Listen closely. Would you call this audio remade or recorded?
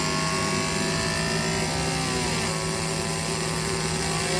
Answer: recorded